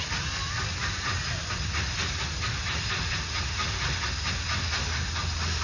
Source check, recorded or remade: recorded